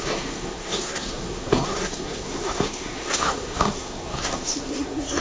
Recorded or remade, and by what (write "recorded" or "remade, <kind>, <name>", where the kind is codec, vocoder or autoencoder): remade, codec, SNAC